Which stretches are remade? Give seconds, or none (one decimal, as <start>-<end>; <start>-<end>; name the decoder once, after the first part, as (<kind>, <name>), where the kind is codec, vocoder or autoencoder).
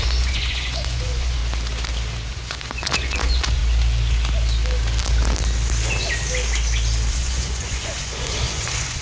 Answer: 0.0-1.4 (vocoder, Vocos); 2.3-3.6; 7.1-9.0